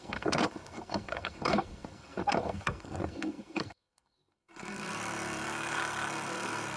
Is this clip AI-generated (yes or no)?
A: yes